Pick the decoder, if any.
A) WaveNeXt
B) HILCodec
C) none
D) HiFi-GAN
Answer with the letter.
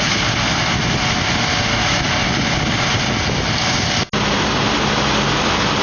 C